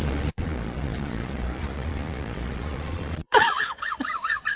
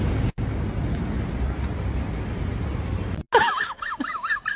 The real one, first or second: second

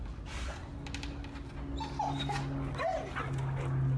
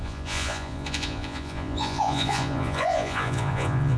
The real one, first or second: first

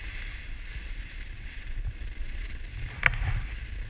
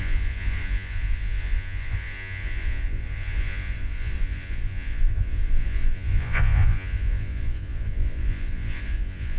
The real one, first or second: first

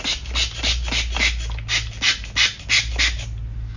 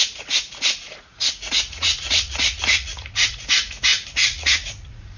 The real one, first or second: first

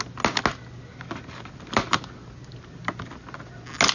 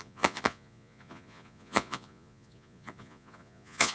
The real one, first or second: first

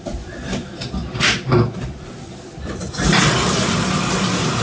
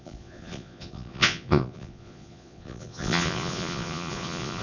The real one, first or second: first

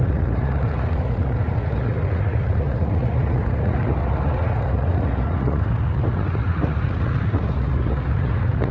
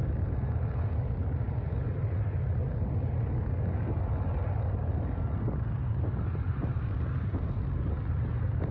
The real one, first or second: second